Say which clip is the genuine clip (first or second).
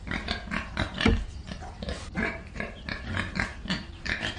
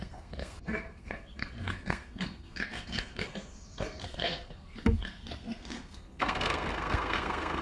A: first